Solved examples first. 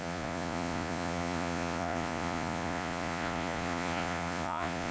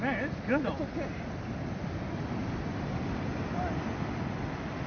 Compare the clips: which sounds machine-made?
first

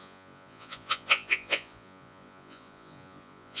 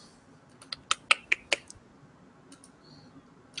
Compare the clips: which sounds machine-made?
first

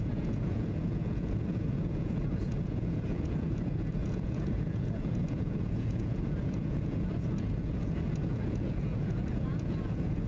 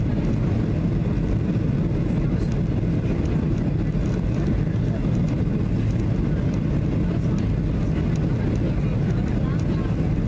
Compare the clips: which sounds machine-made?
first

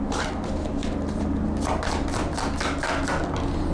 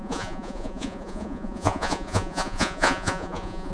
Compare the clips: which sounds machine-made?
second